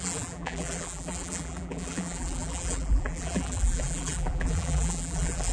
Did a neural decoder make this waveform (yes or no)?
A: yes